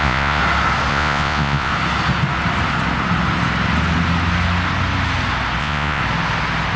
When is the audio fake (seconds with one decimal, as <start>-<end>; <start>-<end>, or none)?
0.0-0.4; 0.9-1.7; 5.6-6.0